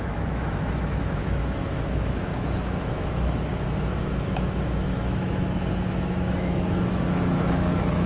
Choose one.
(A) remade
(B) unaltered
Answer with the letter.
A